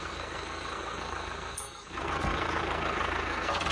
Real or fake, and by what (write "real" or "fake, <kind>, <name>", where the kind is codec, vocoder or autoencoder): fake, codec, SNAC